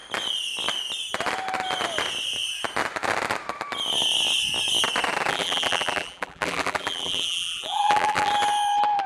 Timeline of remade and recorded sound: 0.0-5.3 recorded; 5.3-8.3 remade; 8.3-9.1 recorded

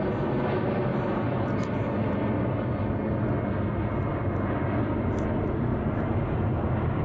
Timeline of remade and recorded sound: 0.0-5.7 recorded; 5.7-7.0 remade

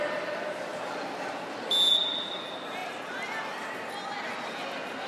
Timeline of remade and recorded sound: 0.0-5.1 recorded

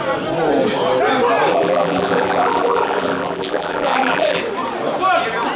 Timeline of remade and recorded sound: 0.0-1.5 recorded; 1.5-4.4 remade; 4.4-5.6 recorded